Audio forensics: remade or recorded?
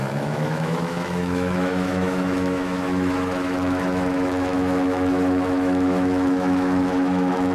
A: remade